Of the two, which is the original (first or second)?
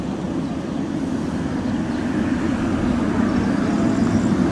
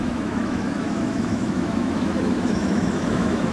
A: first